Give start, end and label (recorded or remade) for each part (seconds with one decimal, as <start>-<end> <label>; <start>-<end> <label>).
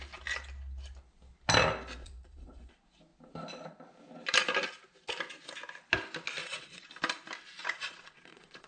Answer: 0.0-2.0 recorded; 2.0-2.7 remade; 2.7-6.4 recorded; 6.4-6.9 remade; 6.9-7.6 recorded; 7.6-8.7 remade